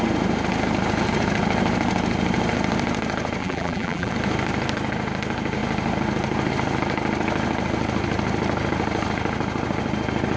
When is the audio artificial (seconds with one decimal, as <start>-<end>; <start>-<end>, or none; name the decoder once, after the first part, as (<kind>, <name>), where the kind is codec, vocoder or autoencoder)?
3.4-4.1 (vocoder, BigVGAN v2)